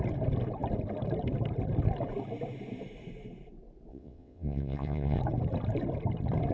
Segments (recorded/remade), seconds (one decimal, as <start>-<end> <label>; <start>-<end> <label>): 0.0-3.9 recorded; 3.9-5.2 remade; 5.2-6.5 recorded